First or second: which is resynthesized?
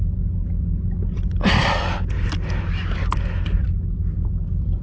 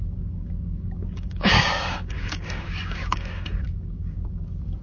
second